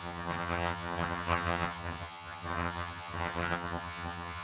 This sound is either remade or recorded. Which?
remade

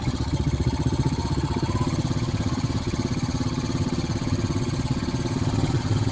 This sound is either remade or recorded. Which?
remade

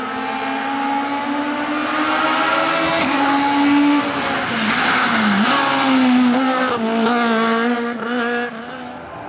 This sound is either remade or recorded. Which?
recorded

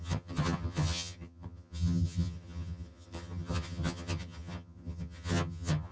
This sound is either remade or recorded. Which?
remade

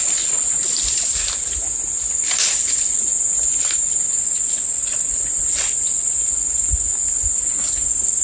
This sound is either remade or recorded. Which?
recorded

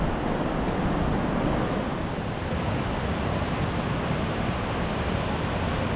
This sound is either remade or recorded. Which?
recorded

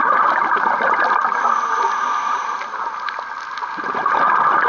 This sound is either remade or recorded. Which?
recorded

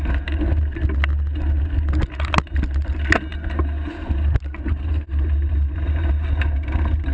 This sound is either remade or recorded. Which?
recorded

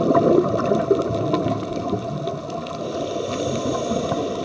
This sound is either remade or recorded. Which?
recorded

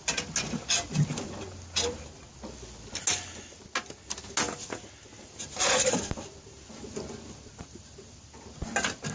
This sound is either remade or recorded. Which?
recorded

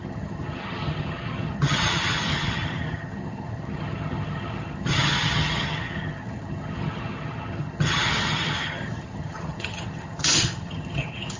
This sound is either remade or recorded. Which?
remade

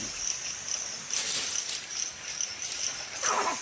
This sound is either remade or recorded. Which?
recorded